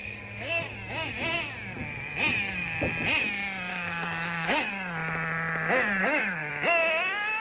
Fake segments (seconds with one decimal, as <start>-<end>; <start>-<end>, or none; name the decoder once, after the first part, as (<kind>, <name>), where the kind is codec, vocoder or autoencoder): 0.0-0.6 (codec, DAC); 3.7-4.7; 6.0-6.5

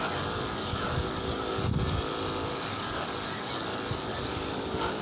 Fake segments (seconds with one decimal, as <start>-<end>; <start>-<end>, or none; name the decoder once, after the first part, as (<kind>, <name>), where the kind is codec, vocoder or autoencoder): 0.6-1.6 (codec, DAC); 2.5-3.5; 4.1-5.0